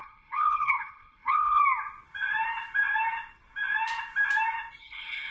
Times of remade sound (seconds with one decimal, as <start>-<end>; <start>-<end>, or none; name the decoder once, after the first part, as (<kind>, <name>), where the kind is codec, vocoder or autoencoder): 0.0-1.6 (codec, HILCodec); 4.8-5.3